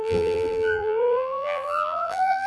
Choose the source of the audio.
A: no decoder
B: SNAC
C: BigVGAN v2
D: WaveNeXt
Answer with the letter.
C